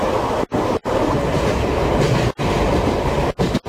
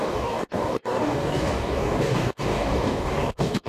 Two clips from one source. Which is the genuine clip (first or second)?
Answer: first